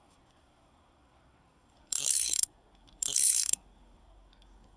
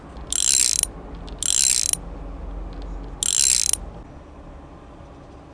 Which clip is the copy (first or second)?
first